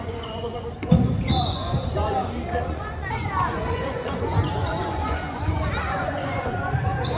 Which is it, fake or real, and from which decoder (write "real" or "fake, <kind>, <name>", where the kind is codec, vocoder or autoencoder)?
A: fake, vocoder, Vocos